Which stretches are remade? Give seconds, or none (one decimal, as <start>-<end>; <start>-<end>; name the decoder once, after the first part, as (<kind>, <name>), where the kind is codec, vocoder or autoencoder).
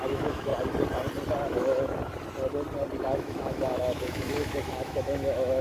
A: 0.0-0.5 (autoencoder, DAC-VAE); 1.5-2.0; 3.0-5.6